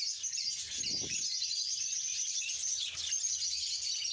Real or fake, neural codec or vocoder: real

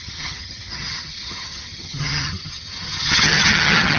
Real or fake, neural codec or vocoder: fake, vocoder, HiFi-GAN